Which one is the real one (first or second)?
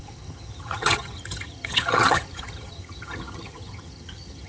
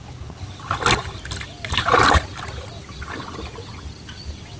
second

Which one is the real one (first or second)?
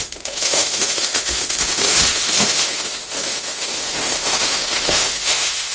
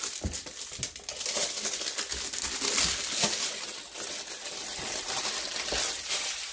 second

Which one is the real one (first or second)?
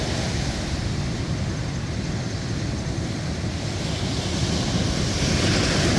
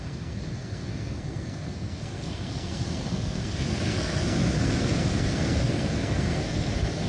first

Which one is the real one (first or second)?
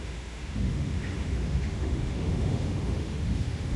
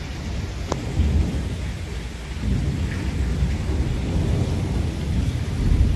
second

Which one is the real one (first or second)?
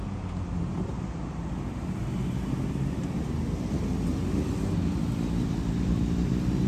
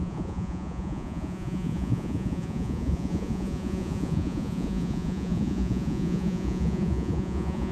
first